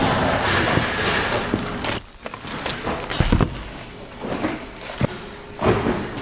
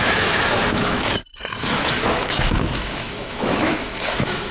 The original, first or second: first